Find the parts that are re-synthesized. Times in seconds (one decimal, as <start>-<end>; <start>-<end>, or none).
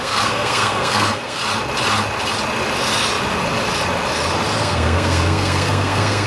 0.0-1.4; 4.6-6.3